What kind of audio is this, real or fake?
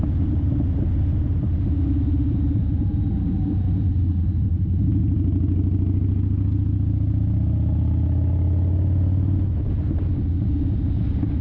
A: real